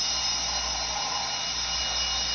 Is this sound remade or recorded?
recorded